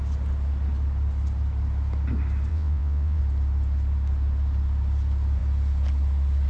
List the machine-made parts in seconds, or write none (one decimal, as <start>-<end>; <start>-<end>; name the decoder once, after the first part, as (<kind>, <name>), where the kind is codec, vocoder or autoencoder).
2.5-3.2 (vocoder, WaveNeXt)